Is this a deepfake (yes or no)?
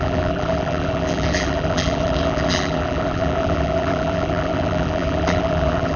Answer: yes